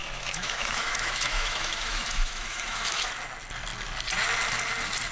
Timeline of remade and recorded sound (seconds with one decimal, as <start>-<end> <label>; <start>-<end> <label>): 0.0-3.1 remade; 3.1-5.1 recorded